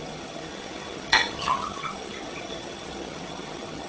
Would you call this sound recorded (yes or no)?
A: no